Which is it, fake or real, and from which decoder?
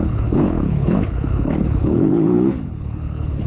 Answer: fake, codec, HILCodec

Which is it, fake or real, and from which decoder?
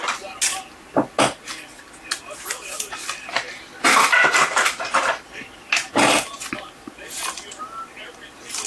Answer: real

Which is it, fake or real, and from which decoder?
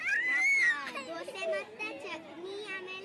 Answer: real